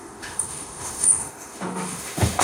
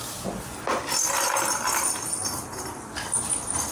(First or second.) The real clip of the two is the second